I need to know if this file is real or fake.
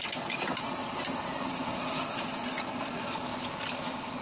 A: real